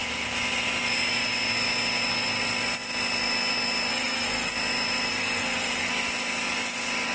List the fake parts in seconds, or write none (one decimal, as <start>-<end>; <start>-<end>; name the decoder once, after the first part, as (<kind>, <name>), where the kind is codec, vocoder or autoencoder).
3.9-4.5 (codec, SNAC); 5.1-5.9